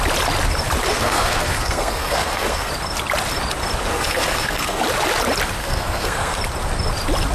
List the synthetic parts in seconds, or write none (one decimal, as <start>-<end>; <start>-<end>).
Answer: 0.9-2.7; 3.9-4.8; 5.6-6.4